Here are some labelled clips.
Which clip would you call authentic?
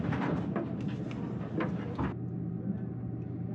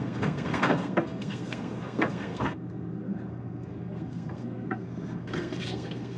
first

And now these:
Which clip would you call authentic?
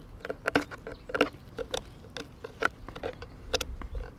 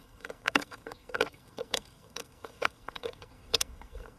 first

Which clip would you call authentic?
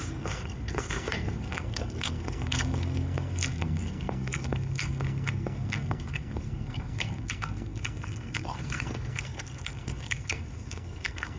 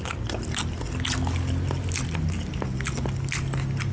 second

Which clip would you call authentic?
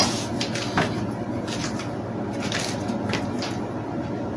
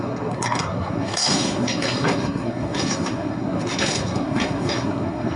first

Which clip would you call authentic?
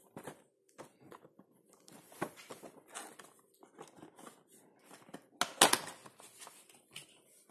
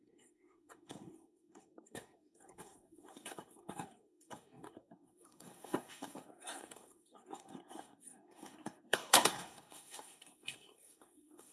first